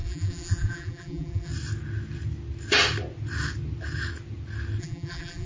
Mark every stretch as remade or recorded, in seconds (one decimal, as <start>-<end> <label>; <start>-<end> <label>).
0.0-1.5 remade; 1.5-4.8 recorded; 4.8-5.5 remade